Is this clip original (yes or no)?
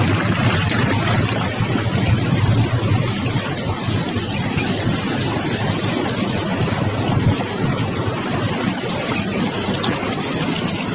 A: yes